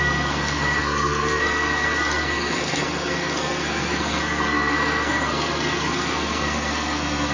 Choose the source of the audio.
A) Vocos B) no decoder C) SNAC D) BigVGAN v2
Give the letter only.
C